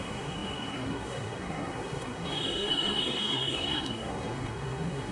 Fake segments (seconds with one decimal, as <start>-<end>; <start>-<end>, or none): 0.0-5.1